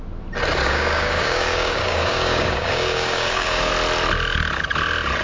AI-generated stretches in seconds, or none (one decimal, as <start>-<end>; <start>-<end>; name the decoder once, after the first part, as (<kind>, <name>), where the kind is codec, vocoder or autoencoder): 0.6-3.7 (codec, DAC)